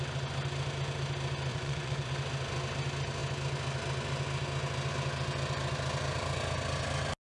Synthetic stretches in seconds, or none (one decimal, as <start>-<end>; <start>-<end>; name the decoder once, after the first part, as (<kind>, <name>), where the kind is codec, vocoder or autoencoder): 1.5-2.1 (vocoder, Vocos)